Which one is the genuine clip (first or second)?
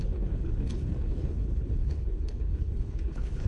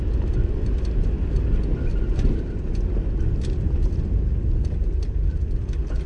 second